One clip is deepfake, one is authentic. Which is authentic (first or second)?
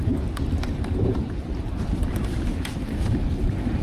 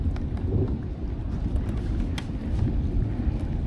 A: second